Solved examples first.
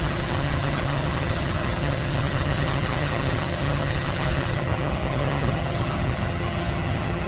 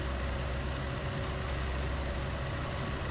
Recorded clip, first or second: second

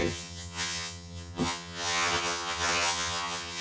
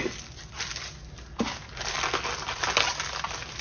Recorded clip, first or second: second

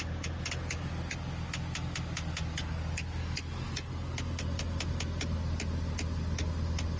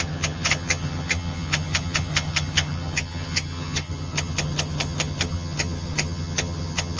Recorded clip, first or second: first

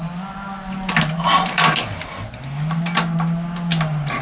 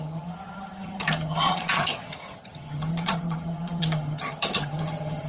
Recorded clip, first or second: first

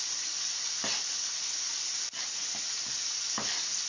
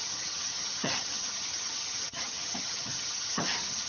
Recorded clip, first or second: first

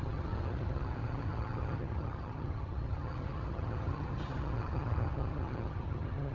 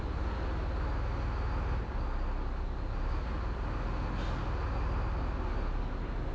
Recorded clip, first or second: second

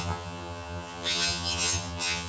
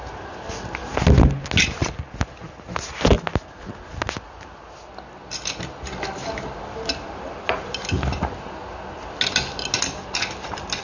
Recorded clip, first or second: second